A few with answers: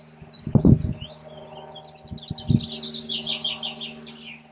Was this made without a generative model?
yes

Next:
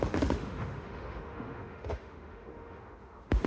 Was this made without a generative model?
no